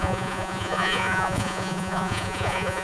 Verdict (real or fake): fake